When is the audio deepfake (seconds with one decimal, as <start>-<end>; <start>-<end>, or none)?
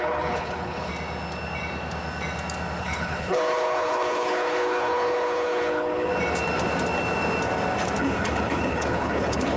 0.0-0.9; 2.8-6.1; 8.0-9.6